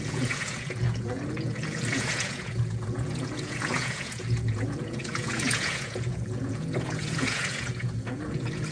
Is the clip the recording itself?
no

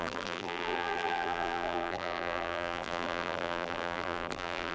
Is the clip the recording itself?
no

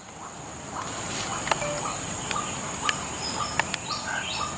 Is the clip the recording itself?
yes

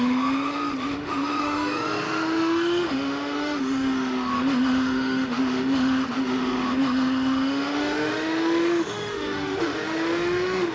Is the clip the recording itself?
no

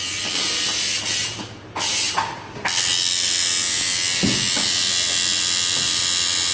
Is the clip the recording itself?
yes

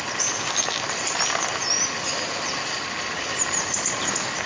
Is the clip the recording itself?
yes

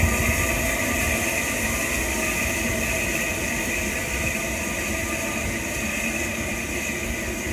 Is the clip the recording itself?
yes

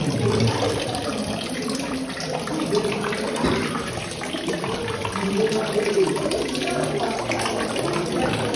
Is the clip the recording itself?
no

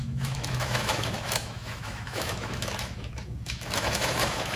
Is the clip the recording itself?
no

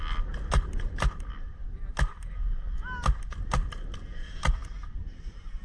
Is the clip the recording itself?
yes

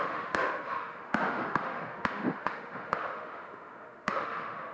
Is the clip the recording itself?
no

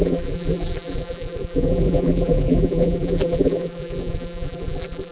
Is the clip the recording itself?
no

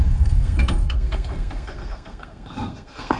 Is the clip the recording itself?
no